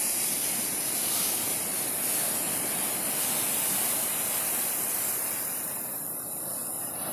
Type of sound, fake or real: real